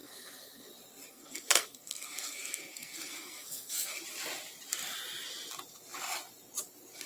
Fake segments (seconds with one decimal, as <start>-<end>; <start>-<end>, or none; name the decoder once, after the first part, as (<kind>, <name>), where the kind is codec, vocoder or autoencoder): 0.0-0.7 (codec, SNAC); 1.1-4.0